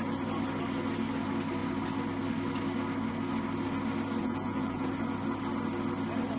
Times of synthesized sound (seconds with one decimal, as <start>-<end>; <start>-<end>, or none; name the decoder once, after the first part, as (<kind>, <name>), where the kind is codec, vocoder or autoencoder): 4.2-4.9 (vocoder, Vocos)